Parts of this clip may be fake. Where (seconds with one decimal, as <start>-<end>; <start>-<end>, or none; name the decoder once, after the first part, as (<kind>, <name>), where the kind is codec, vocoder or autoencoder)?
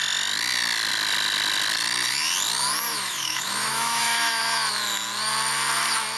2.9-4.4 (autoencoder, DAC-VAE)